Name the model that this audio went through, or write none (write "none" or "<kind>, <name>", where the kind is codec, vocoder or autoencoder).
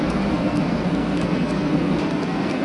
codec, SNAC